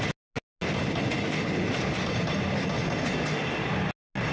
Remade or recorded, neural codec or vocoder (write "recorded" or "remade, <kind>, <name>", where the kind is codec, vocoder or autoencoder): recorded